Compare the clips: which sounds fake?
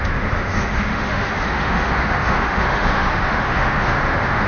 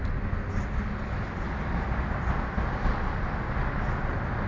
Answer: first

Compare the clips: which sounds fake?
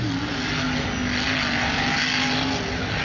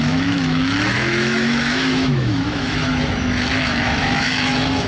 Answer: second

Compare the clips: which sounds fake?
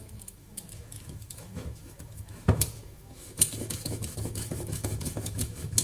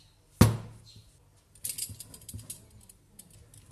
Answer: first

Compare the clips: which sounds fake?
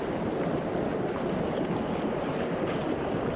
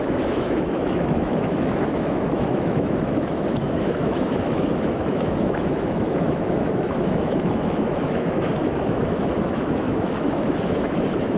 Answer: second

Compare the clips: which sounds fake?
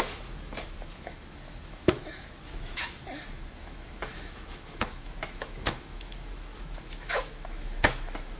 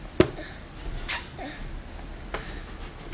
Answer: first